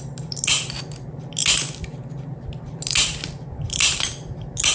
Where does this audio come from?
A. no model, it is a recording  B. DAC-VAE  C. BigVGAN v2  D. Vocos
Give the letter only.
A